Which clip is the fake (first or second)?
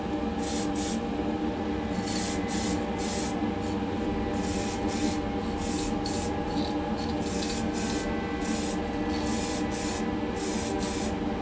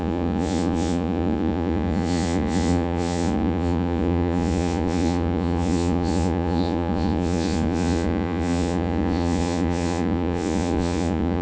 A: second